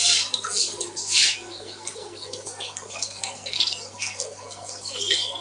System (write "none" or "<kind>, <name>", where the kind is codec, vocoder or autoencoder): codec, SNAC